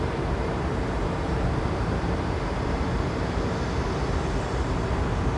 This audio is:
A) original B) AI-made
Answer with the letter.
B